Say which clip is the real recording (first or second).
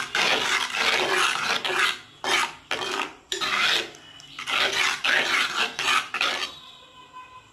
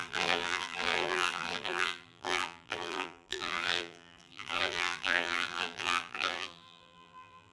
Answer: first